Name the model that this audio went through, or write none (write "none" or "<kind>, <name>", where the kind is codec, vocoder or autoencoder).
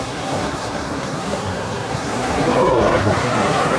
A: codec, SNAC